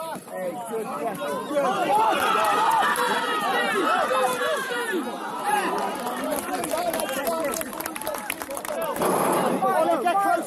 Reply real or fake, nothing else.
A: fake